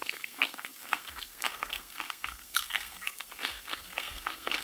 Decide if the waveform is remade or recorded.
remade